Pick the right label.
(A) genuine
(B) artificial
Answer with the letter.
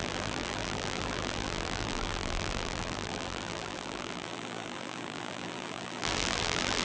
B